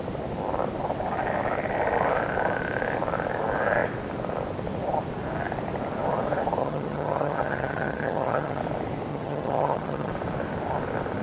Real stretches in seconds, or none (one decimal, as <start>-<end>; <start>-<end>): 0.0-6.6; 8.6-9.1; 10.1-11.2